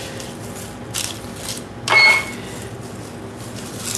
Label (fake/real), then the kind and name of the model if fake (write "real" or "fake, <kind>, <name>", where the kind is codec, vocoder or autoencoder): real